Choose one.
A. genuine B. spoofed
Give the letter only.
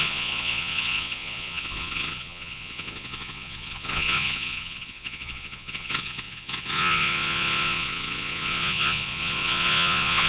B